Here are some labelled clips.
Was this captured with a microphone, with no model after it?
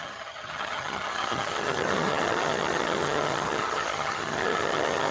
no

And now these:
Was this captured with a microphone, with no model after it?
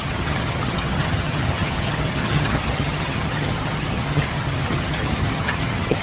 no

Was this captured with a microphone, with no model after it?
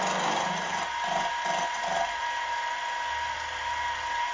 yes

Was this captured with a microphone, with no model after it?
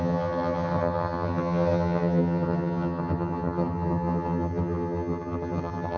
no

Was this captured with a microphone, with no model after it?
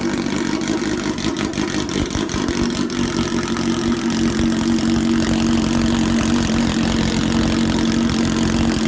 yes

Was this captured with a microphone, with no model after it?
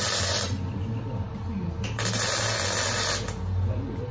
yes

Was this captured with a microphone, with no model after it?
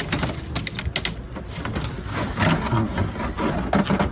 yes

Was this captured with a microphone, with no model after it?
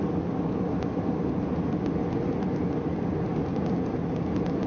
yes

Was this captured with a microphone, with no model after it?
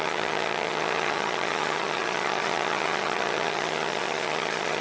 no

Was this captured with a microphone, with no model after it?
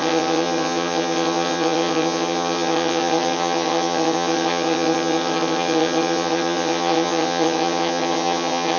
no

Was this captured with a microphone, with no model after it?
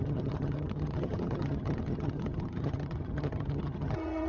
no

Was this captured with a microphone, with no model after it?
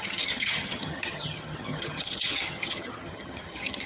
no